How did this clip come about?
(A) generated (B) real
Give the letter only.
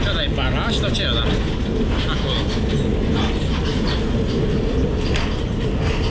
B